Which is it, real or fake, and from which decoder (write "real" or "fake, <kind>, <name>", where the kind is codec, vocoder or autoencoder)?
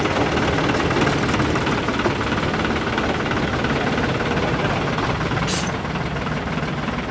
real